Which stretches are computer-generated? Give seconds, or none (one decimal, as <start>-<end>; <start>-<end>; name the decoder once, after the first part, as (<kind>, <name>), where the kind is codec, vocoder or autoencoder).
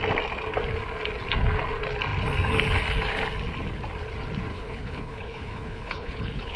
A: 4.5-6.6 (codec, HILCodec)